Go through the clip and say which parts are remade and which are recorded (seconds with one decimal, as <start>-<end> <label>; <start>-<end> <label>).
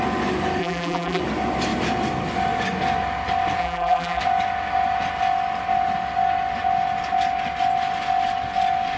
0.0-0.6 recorded; 0.6-1.2 remade; 1.2-3.6 recorded; 3.6-4.2 remade; 4.2-9.0 recorded